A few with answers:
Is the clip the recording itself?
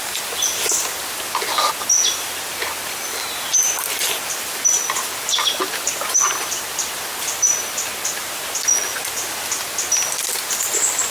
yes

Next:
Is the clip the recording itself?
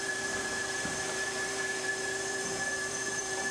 no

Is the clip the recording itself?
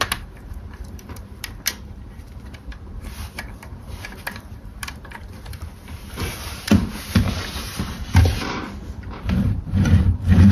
no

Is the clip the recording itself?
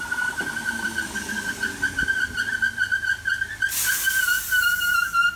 no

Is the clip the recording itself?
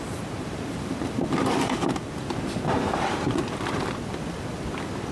no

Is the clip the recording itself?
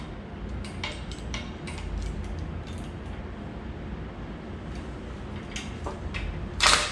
yes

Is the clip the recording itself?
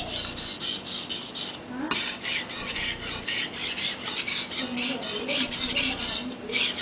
yes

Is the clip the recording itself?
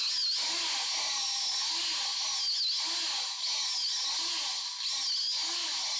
yes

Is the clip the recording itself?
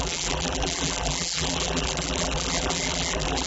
no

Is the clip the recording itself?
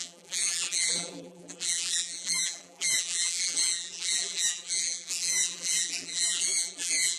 no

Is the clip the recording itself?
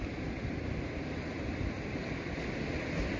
yes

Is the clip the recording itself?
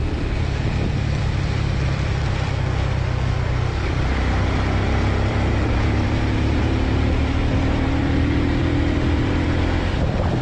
no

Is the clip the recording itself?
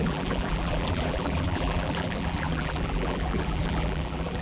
no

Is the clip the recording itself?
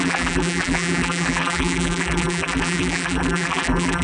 no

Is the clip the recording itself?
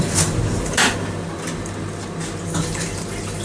no